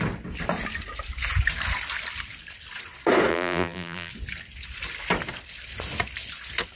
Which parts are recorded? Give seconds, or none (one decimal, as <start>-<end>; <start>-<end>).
0.0-3.3; 4.1-6.8